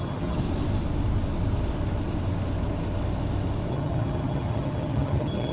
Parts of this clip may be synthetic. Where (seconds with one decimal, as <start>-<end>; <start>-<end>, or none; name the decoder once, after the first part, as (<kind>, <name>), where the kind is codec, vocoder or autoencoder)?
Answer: 0.0-0.4 (vocoder, HiFi-GAN); 3.7-5.5